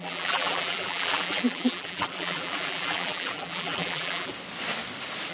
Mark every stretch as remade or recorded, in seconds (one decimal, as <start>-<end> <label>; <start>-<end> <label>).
0.0-4.3 remade; 4.3-5.3 recorded